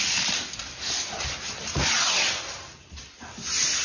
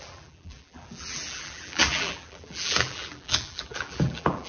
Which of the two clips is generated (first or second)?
second